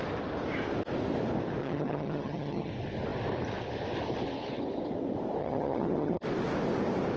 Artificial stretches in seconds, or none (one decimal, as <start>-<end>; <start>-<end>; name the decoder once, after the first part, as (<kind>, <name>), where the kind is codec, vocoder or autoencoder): 1.6-2.7 (vocoder, HiFi-GAN); 5.4-6.2